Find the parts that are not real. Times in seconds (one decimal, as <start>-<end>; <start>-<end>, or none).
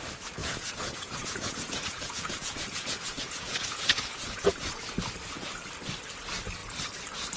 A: 0.4-4.8